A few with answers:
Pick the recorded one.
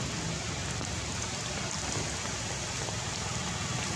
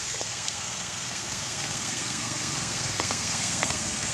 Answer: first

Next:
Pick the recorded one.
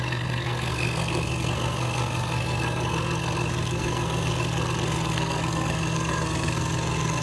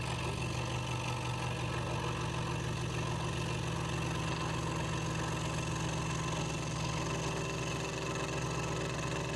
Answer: second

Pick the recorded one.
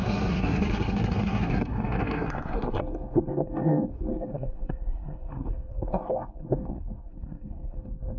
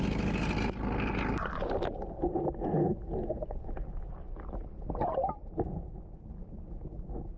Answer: second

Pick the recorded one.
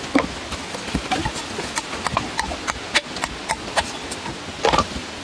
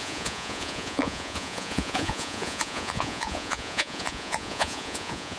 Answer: first